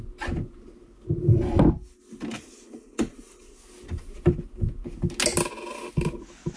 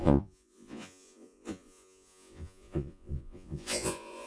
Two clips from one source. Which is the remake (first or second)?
second